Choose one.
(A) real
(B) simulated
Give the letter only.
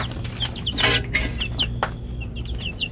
A